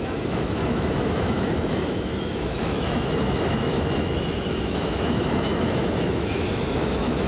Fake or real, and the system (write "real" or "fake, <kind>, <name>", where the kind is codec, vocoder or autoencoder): fake, autoencoder, DAC-VAE